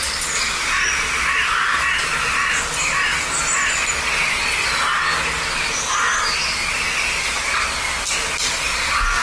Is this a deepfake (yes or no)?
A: no